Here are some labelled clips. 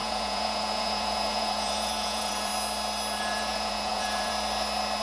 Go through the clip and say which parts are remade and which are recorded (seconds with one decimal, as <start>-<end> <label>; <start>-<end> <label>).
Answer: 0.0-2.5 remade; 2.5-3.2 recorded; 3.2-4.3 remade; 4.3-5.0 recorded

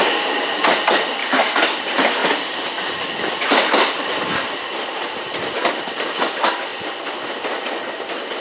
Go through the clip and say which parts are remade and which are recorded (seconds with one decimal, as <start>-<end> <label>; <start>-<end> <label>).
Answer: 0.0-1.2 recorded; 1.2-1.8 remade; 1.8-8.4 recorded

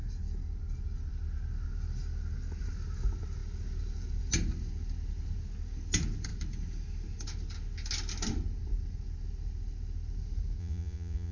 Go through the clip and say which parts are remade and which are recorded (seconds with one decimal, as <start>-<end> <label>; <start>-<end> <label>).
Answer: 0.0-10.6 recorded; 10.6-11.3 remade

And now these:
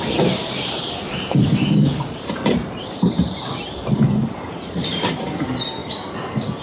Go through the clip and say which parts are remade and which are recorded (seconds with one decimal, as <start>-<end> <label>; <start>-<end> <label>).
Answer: 0.0-1.5 remade; 1.5-2.0 recorded; 2.0-5.8 remade; 5.8-6.6 recorded